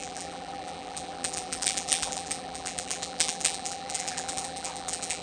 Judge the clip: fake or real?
fake